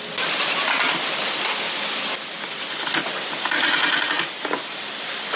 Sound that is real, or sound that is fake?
real